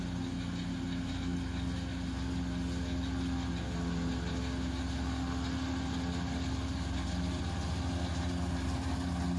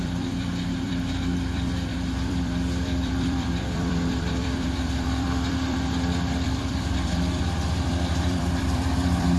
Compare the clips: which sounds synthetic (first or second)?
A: second